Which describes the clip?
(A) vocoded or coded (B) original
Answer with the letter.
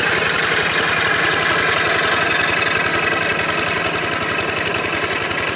B